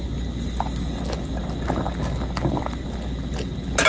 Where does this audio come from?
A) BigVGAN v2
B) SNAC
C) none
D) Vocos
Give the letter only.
C